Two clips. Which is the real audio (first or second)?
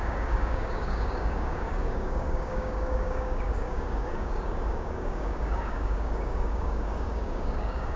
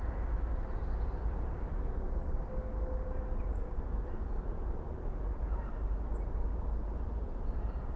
second